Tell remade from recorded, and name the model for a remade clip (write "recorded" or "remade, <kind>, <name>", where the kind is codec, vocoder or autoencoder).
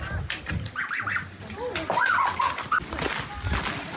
recorded